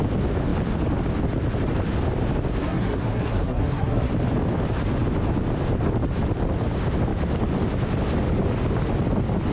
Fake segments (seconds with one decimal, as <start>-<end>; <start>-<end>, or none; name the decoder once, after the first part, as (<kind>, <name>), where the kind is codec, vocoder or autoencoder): 2.6-4.1 (codec, SNAC)